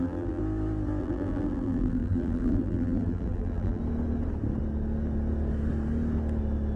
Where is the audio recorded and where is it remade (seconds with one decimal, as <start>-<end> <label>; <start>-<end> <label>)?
0.0-0.4 remade; 0.4-1.0 recorded; 1.0-3.8 remade; 3.8-6.8 recorded